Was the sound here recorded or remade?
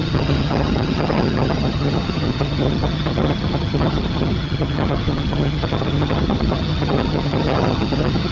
remade